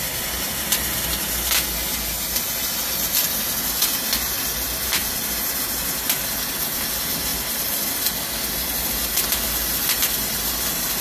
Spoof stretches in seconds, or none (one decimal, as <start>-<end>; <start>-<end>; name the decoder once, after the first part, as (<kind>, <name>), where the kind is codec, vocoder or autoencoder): none